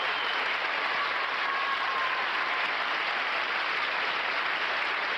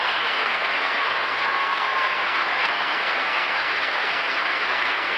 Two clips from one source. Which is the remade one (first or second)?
second